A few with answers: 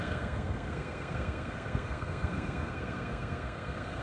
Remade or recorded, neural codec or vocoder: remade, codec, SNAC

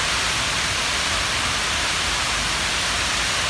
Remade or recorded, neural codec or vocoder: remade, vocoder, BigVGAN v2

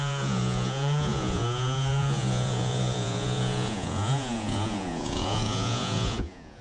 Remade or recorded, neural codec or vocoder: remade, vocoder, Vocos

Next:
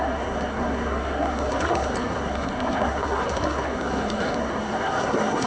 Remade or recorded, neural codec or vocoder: remade, codec, SNAC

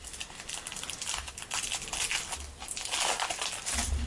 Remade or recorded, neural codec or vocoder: recorded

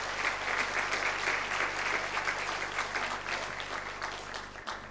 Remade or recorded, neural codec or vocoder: recorded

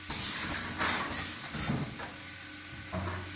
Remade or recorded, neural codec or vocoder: recorded